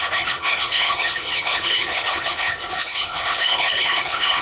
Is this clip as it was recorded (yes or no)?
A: no